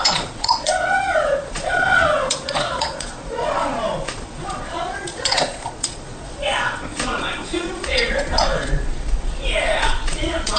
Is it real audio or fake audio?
fake